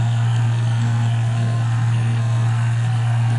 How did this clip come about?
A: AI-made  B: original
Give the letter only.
A